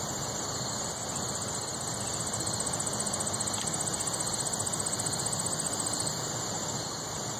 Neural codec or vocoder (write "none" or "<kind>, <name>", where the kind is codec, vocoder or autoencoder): none